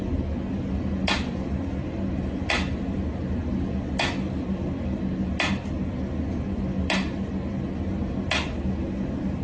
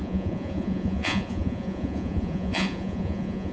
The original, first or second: first